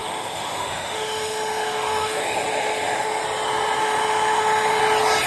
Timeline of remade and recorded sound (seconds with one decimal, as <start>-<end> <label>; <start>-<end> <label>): 0.0-3.2 remade; 3.2-3.8 recorded; 3.8-4.8 remade; 4.8-5.3 recorded